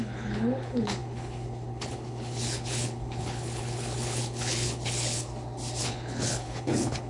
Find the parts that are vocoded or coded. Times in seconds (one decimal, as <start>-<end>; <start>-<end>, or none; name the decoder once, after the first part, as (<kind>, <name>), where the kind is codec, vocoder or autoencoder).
0.0-5.3 (codec, HILCodec); 5.8-7.1

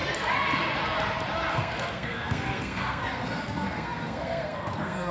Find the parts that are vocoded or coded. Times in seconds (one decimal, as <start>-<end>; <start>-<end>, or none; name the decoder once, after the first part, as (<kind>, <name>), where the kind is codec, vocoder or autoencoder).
1.5-5.1 (codec, SNAC)

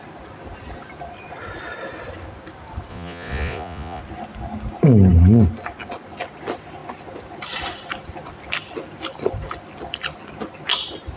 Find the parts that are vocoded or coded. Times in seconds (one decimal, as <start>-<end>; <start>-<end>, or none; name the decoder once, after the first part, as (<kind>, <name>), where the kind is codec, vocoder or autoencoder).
2.9-4.0 (vocoder, Vocos)

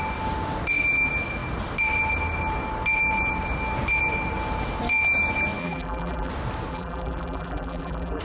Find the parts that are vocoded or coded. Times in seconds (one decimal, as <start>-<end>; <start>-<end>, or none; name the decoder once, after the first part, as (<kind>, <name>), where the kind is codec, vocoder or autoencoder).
5.6-6.3 (vocoder, BigVGAN v2); 6.7-8.2

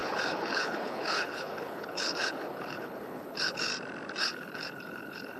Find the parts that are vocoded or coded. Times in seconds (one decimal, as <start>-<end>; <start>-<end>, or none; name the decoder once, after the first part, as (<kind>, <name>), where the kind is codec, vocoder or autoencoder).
0.0-3.7 (codec, HILCodec); 4.2-5.4

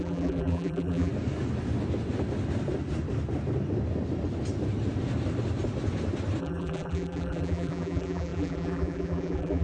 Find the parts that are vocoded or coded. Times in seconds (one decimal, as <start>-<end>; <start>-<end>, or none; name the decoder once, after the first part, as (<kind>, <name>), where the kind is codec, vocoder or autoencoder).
0.0-1.1 (vocoder, BigVGAN v2); 6.4-9.6

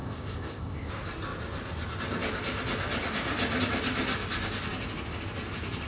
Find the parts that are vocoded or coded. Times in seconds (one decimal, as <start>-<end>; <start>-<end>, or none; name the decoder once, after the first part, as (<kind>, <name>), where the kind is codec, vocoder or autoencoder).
0.0-0.9 (codec, ZipCodec)

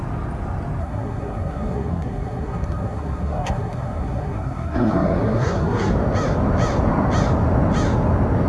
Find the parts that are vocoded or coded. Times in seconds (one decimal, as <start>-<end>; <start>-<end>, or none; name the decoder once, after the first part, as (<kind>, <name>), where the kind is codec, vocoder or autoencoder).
0.8-5.9 (codec, SNAC)